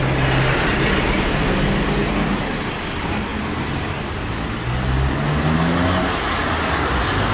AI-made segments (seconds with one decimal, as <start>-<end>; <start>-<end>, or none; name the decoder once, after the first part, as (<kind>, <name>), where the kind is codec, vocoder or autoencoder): none